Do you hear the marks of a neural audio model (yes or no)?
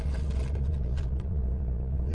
yes